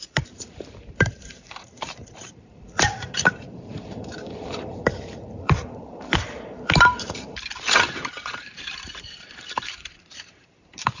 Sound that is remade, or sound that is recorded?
remade